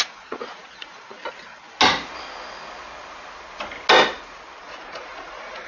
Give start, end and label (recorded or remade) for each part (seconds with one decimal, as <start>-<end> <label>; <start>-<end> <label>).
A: 0.0-1.2 remade; 1.2-4.6 recorded; 4.6-5.7 remade